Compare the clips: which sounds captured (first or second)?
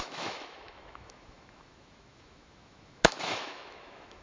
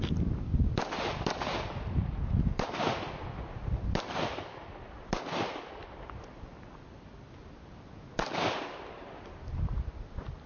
second